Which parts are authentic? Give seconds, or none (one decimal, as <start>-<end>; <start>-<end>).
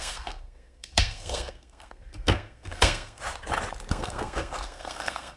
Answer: 3.2-3.9